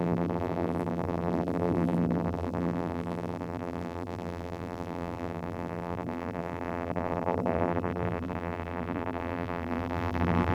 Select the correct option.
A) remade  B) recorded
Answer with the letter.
A